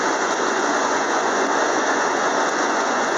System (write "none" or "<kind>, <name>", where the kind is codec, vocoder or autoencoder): vocoder, Vocos